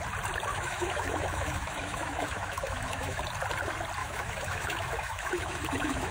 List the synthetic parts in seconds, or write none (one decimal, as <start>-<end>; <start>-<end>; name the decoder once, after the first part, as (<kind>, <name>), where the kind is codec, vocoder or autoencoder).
0.5-3.2 (autoencoder, DAC-VAE); 4.0-6.1